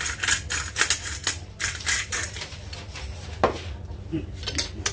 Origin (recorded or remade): recorded